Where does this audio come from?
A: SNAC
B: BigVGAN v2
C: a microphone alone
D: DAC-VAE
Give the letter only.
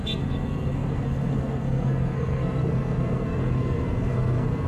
A